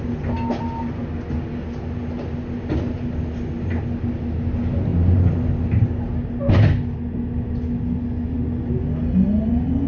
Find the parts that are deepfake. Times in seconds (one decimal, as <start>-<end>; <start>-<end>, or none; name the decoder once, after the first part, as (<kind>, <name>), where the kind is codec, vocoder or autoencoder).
none